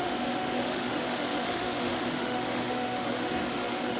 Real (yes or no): no